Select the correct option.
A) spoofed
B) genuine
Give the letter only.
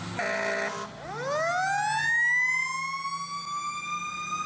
B